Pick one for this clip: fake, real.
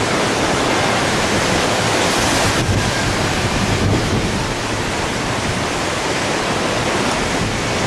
fake